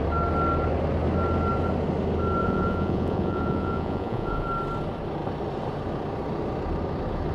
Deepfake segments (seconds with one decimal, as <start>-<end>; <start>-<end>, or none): 2.4-4.5